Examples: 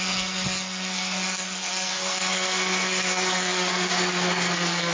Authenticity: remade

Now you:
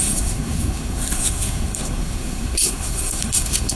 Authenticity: remade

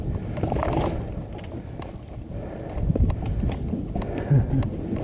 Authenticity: recorded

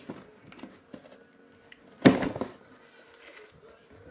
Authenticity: recorded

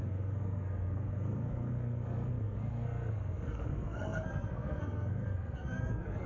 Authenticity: remade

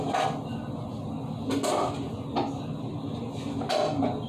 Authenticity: recorded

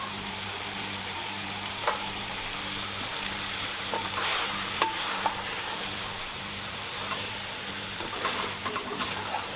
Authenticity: remade